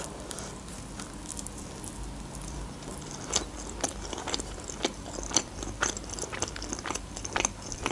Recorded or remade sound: recorded